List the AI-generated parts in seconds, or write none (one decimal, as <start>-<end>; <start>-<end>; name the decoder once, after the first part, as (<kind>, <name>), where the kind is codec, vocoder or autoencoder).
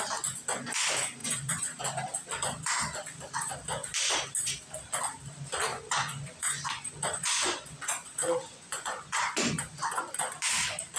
1.2-1.8 (vocoder, Vocos); 5.7-10.1